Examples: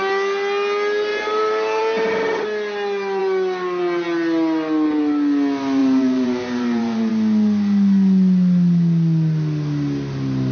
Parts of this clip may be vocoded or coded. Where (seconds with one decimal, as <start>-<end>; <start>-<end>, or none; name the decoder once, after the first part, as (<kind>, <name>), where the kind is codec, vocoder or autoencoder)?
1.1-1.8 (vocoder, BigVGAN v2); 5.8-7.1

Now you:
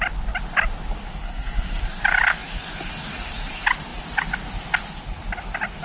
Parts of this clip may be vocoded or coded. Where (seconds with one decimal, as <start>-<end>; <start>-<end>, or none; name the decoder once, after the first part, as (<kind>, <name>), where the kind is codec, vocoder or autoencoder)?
1.2-1.8 (codec, SNAC)

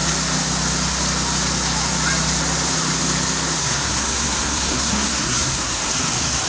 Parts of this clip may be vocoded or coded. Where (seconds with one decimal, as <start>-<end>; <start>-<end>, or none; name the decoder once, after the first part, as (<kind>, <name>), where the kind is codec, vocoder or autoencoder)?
3.6-5.9 (codec, SNAC)

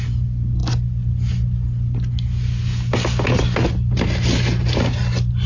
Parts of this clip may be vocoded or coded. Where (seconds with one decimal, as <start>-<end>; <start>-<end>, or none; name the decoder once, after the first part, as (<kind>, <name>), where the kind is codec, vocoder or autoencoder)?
none

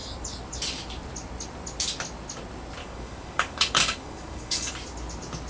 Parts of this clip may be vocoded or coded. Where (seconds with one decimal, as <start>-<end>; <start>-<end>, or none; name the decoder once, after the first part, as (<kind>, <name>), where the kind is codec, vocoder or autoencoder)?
2.8-4.7 (codec, DAC)